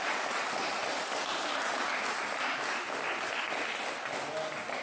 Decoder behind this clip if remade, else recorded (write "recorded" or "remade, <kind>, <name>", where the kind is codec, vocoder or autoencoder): recorded